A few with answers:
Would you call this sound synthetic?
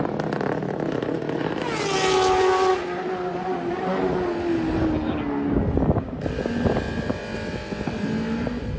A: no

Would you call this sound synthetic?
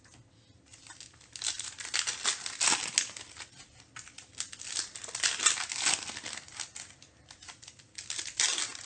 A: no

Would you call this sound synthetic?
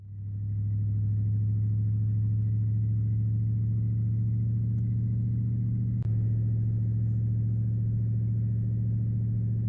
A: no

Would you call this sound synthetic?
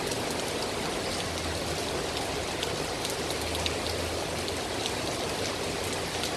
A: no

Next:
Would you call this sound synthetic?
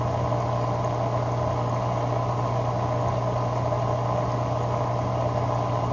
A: no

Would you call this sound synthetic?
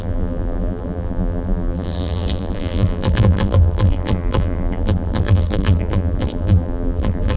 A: yes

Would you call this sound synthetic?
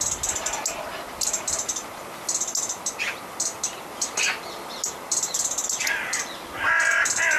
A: yes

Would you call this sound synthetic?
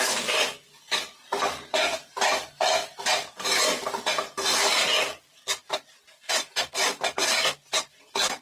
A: no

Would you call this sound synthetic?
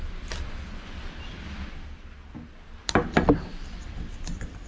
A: yes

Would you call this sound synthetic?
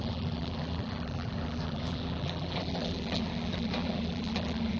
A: yes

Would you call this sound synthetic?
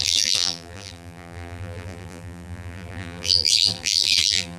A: yes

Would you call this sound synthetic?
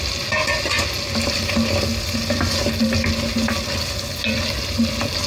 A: no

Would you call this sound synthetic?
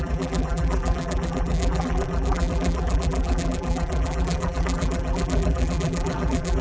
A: yes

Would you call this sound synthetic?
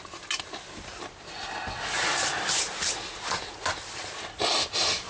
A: no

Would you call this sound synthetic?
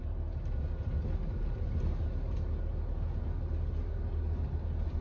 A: no